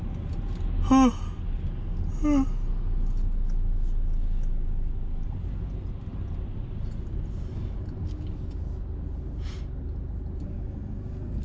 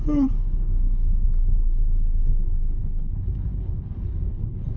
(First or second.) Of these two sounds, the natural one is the first